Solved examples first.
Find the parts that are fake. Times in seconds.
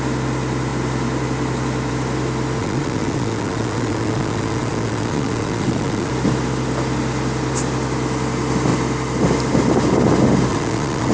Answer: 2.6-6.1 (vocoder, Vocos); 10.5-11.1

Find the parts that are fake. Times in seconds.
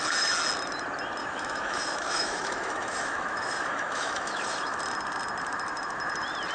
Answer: 1.2-4.8 (autoencoder, DAC-VAE)